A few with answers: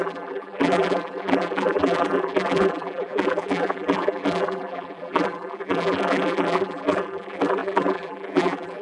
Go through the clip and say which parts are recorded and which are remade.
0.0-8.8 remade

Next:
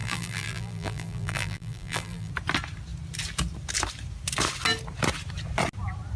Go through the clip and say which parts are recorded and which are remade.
0.0-2.3 remade; 2.3-6.2 recorded

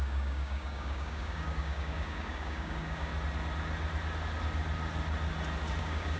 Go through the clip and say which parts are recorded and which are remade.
0.0-3.1 remade; 3.1-5.8 recorded; 5.8-6.2 remade

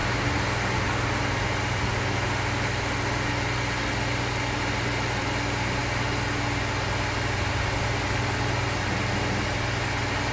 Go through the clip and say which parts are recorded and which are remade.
0.0-10.3 recorded

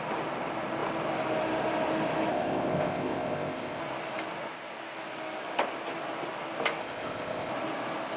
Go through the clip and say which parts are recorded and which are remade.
0.0-2.3 recorded; 2.3-3.8 remade; 3.8-6.8 recorded; 6.8-7.5 remade; 7.5-8.2 recorded

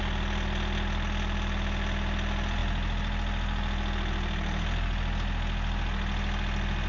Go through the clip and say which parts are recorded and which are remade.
0.0-6.9 recorded